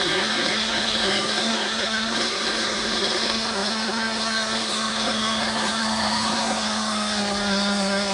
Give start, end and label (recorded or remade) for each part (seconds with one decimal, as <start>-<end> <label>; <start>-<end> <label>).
0.0-8.1 remade